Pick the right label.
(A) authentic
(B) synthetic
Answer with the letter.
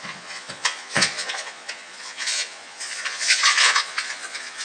B